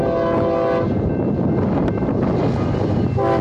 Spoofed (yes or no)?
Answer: no